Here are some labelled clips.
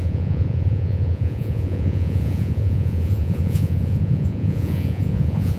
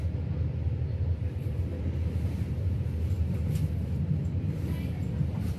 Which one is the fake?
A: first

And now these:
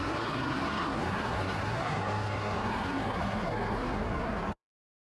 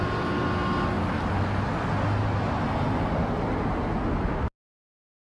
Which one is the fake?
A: first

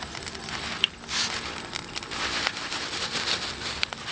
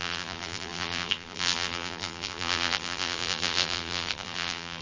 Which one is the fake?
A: second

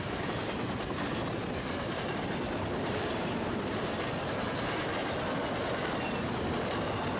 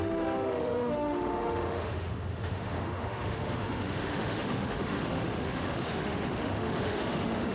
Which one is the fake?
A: second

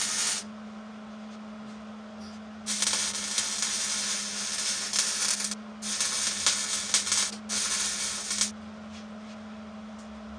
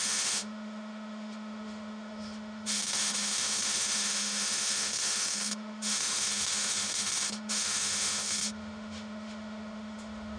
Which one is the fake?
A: second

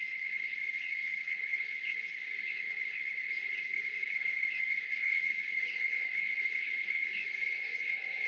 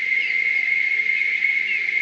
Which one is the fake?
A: first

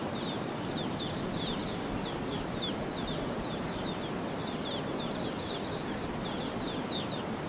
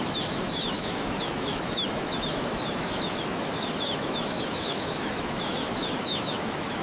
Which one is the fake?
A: second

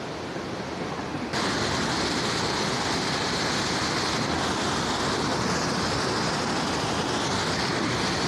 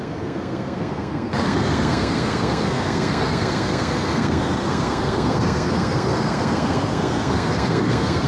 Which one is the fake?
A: second